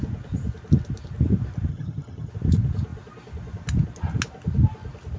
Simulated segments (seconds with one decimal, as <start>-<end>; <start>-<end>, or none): 1.7-2.3